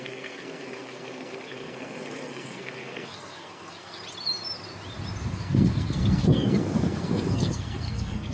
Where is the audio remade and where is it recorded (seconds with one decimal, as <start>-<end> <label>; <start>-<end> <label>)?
0.0-4.0 remade; 4.0-5.3 recorded; 5.3-8.3 remade